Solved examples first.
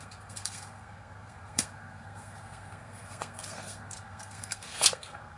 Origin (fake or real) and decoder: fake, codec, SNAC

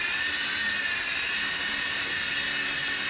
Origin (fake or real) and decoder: fake, vocoder, BigVGAN v2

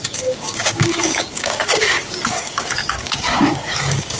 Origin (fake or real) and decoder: fake, codec, DAC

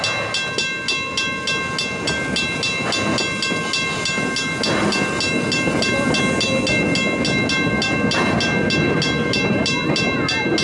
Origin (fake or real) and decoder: real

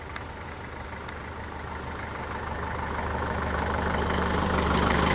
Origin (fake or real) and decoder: fake, vocoder, BigVGAN v2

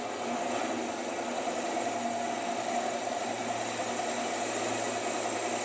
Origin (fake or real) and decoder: real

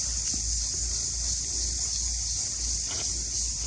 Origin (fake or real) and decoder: real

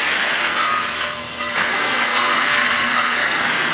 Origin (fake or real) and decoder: fake, codec, SNAC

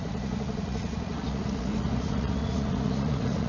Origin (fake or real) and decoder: fake, vocoder, Vocos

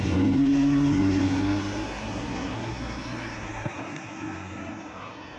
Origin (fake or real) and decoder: fake, codec, SNAC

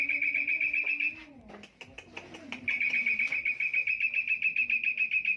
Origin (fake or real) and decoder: real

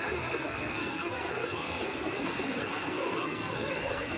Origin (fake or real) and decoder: fake, codec, SNAC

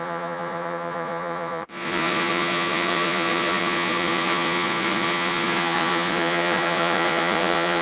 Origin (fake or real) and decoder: fake, vocoder, Vocos